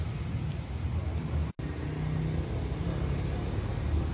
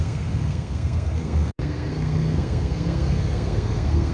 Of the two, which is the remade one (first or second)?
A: second